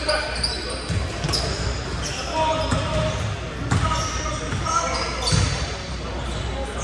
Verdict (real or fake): real